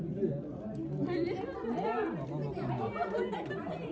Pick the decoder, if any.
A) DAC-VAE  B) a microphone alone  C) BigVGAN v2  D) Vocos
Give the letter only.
B